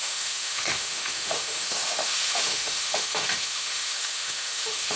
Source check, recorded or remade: remade